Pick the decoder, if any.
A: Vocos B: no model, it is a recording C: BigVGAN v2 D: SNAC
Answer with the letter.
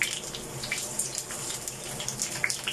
B